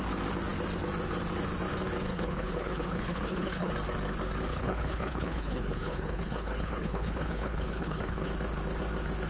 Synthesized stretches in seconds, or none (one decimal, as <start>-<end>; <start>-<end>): 2.1-3.7; 4.5-8.3